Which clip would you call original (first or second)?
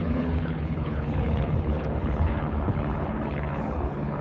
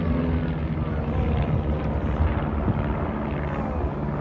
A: second